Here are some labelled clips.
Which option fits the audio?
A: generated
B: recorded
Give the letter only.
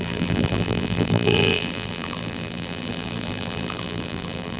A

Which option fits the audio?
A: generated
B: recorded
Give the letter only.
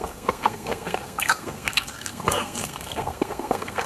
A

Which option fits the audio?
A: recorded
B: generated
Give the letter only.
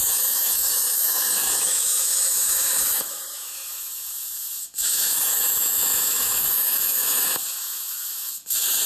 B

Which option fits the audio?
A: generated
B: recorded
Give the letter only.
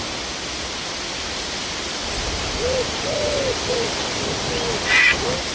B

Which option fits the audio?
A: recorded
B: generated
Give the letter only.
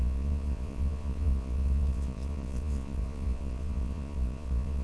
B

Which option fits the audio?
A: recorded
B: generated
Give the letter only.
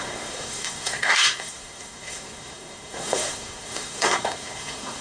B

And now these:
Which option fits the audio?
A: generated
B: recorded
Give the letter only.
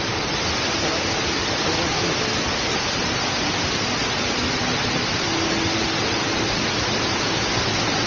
B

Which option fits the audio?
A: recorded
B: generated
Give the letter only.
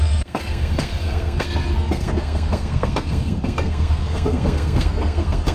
B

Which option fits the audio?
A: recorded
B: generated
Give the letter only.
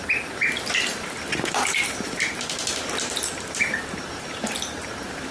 B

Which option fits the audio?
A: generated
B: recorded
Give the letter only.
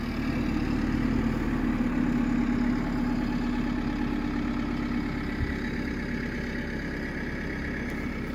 B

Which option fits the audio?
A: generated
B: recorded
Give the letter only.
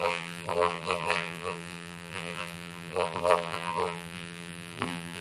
A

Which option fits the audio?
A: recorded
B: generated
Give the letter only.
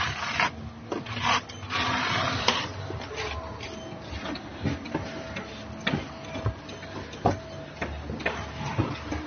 A